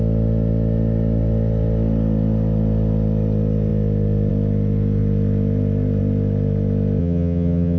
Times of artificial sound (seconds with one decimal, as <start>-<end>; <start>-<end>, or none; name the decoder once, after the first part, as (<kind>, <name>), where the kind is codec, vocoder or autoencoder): 7.0-7.8 (vocoder, HiFi-GAN)

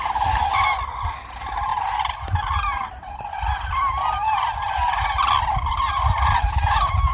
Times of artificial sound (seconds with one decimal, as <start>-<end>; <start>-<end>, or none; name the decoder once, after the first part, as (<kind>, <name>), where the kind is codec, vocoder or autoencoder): none

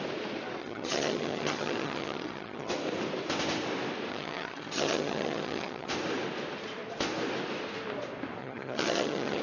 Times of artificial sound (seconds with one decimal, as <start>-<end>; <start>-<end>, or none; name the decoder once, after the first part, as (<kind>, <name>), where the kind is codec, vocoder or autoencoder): 0.6-2.7 (vocoder, HiFi-GAN); 4.1-5.9; 8.4-9.4

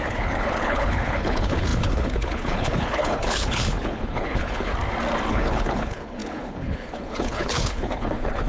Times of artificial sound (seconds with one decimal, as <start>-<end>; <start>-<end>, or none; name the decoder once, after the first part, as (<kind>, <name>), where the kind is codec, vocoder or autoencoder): 0.0-4.7 (codec, HILCodec); 5.3-8.5

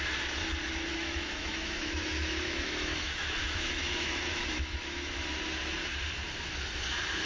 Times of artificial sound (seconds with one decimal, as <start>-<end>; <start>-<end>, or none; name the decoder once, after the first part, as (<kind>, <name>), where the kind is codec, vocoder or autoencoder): 0.9-5.2 (autoencoder, DAC-VAE)

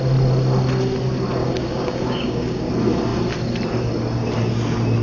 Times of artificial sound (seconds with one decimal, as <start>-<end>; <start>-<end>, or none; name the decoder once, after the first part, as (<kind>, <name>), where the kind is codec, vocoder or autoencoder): 1.4-2.7 (codec, DAC)